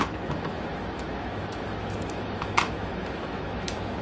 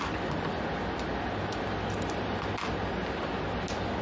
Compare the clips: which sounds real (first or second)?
second